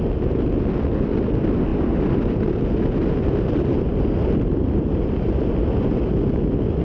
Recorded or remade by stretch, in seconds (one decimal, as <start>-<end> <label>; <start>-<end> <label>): 0.0-6.8 recorded